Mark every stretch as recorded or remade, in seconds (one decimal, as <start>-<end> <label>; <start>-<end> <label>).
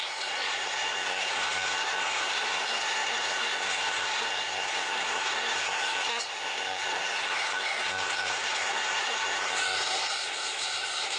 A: 0.0-11.2 remade